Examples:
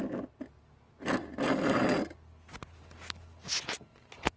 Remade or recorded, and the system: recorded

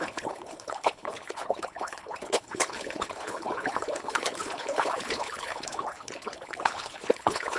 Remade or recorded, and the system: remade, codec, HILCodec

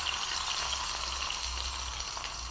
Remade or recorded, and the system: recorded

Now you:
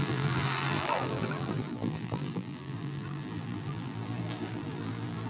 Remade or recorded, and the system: remade, vocoder, BigVGAN v2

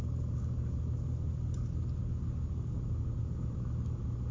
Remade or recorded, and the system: recorded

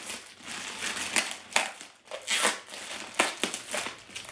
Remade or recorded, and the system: recorded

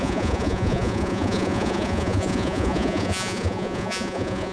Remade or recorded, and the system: remade, vocoder, Vocos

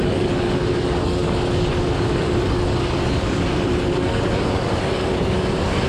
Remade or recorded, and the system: remade, codec, DAC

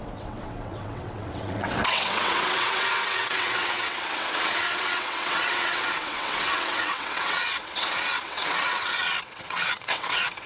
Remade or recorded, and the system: remade, vocoder, WaveNeXt